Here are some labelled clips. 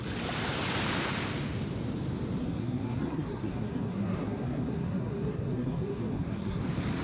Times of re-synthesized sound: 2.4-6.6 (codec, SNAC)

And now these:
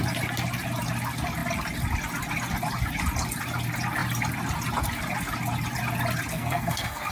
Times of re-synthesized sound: 6.3-7.1 (codec, SNAC)

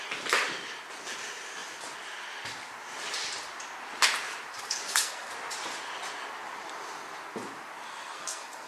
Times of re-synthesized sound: 4.5-5.3 (codec, SNAC); 7.9-8.7

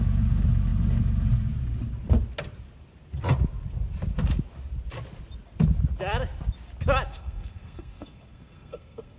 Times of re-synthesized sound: 7.1-9.2 (codec, SNAC)

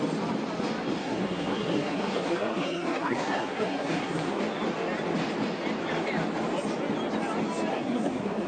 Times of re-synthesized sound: 1.0-4.4 (codec, SNAC); 7.7-8.5

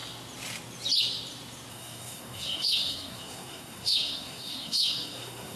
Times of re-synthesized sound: 1.7-5.6 (codec, SNAC)

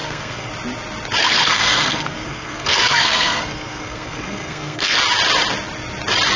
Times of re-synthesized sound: 0.0-0.5 (codec, SNAC); 1.2-5.0